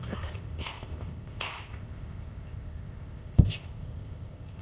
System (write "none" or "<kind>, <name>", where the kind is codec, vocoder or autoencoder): codec, ZipCodec